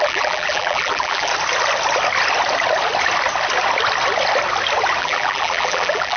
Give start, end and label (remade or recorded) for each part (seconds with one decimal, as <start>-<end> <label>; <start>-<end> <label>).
0.0-1.3 remade; 1.3-5.0 recorded; 5.0-6.2 remade